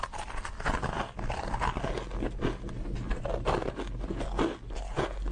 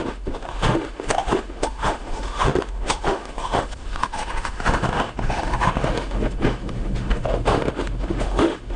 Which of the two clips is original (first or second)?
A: first